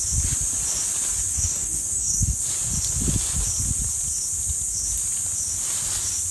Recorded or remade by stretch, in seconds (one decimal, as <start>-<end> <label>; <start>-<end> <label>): 0.0-1.3 recorded; 1.3-2.4 remade; 2.4-6.3 recorded